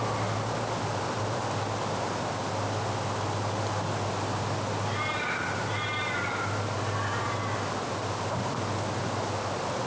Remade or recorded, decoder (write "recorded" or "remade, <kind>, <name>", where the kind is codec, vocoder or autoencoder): recorded